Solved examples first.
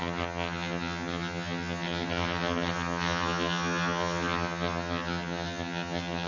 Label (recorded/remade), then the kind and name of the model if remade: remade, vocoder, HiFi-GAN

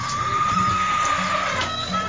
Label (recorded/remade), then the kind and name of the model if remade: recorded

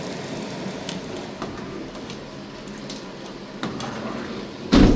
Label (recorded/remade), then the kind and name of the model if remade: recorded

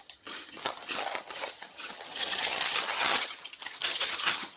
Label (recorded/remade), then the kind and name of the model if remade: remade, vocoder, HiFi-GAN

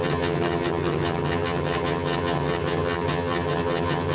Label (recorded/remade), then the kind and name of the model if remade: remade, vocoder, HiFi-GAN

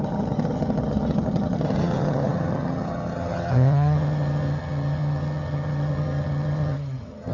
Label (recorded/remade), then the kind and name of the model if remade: remade, vocoder, HiFi-GAN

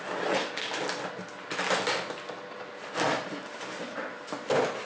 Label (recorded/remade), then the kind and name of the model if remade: recorded